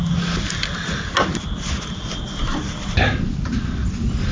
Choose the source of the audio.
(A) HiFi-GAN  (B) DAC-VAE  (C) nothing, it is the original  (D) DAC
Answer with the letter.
C